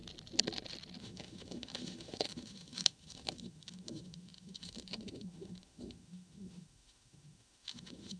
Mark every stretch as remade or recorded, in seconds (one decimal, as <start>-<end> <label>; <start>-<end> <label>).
0.0-1.0 recorded; 1.0-8.2 remade

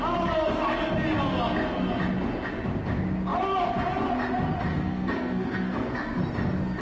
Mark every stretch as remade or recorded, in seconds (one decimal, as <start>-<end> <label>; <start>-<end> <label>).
0.0-4.7 recorded; 4.7-6.2 remade; 6.2-6.8 recorded

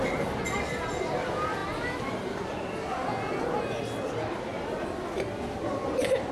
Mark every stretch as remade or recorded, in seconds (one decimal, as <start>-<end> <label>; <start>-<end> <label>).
0.0-6.3 recorded

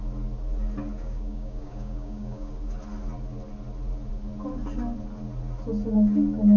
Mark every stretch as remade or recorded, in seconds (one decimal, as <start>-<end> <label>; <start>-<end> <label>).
0.0-1.0 recorded; 1.0-2.5 remade; 2.5-6.6 recorded

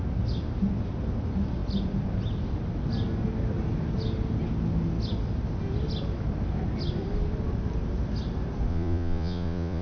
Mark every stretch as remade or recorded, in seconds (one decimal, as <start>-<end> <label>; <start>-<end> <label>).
0.0-8.7 recorded; 8.7-9.8 remade

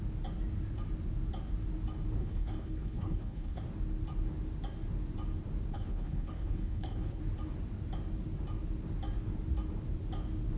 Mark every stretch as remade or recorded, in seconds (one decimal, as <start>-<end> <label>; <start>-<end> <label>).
0.0-2.2 recorded; 2.2-3.6 remade; 3.6-5.7 recorded; 5.7-7.2 remade; 7.2-10.6 recorded